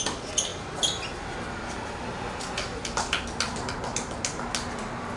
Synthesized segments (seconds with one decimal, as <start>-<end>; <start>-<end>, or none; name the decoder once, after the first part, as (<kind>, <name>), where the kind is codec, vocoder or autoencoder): none